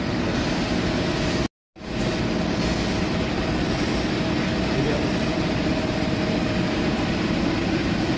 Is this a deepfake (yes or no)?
no